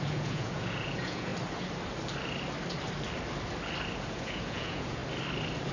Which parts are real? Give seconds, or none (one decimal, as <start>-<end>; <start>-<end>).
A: 1.3-4.0; 5.0-5.7